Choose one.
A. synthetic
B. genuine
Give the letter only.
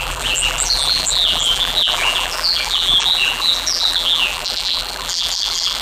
A